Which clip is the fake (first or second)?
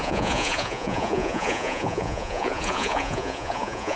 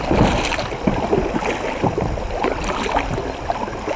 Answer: first